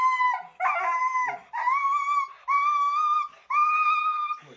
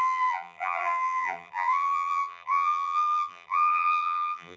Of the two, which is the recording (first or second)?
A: first